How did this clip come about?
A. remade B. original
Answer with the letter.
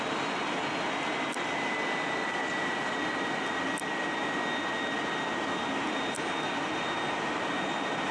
B